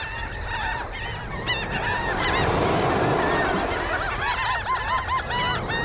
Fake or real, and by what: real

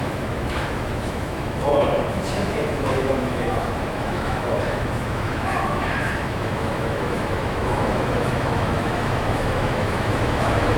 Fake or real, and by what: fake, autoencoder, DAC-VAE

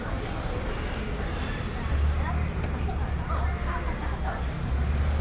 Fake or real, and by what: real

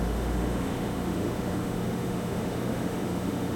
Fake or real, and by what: fake, autoencoder, DAC-VAE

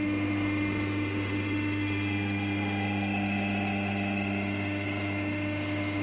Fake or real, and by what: fake, autoencoder, DAC-VAE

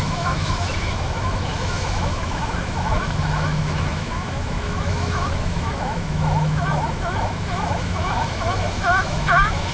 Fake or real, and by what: fake, autoencoder, DAC-VAE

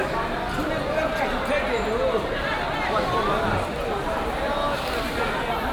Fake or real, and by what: real